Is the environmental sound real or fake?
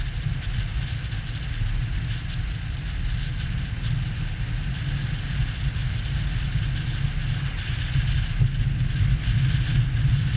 real